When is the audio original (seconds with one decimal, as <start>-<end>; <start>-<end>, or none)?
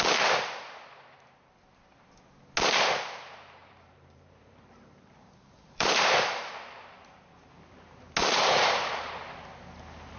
0.0-3.6; 6.5-8.2; 9.1-10.2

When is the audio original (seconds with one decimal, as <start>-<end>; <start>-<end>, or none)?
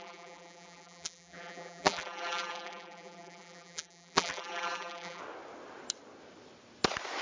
5.2-7.2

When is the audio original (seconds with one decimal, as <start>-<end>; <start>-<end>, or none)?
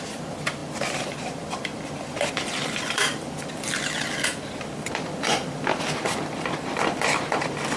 none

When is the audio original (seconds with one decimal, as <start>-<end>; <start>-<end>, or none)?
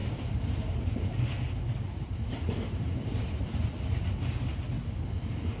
3.4-5.6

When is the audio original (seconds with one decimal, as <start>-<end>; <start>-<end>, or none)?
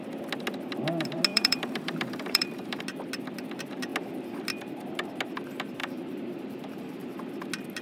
0.0-1.3; 2.8-5.8; 7.1-7.8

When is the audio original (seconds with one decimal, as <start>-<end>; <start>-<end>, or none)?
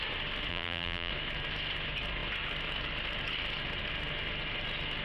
0.0-0.5; 1.1-5.0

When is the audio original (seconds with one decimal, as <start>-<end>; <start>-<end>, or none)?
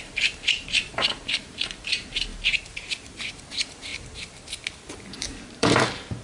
2.3-3.3; 3.9-5.2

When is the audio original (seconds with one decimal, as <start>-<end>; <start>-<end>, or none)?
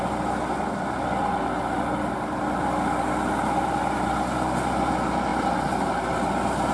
0.0-5.3; 5.9-6.7